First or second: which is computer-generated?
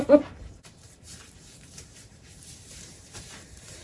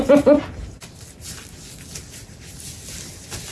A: first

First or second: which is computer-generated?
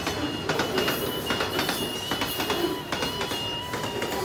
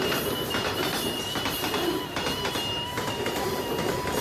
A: second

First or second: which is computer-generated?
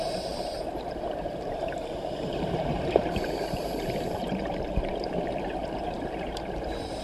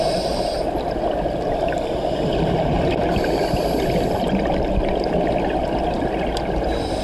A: first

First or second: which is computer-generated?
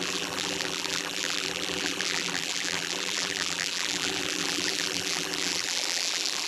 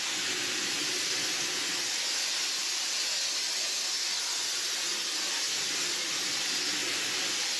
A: first